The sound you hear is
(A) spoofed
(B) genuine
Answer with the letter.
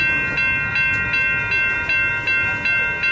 B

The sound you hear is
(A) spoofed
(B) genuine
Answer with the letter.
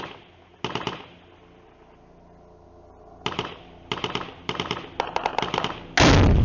B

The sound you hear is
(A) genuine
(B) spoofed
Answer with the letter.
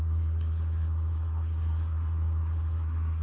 B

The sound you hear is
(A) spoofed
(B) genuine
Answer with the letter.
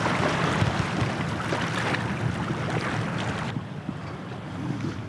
B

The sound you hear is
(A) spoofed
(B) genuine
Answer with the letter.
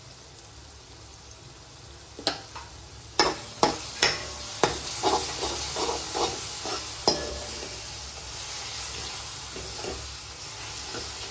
B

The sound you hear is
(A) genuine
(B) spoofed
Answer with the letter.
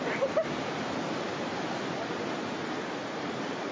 A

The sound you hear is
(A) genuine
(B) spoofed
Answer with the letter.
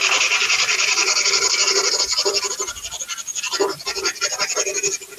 A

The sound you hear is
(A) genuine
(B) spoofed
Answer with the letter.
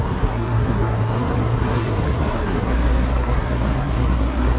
B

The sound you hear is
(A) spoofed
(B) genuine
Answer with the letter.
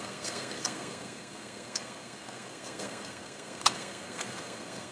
A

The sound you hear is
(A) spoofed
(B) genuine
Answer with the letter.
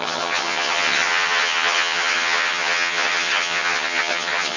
A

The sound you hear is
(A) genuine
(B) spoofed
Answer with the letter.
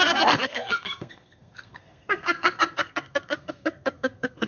B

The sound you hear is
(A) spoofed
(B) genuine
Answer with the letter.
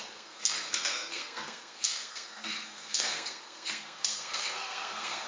A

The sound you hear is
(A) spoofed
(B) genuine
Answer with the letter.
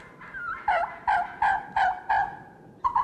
B